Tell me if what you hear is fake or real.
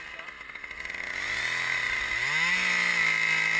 real